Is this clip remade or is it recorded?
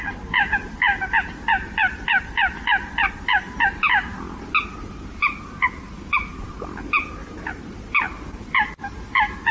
recorded